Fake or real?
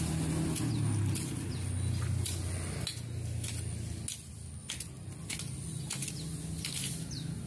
real